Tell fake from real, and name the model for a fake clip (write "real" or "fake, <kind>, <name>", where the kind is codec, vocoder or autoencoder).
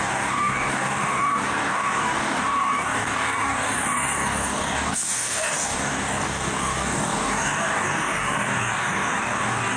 fake, codec, DAC